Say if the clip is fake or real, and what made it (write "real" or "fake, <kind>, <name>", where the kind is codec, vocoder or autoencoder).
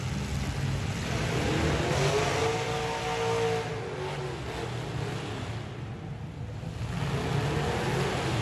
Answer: real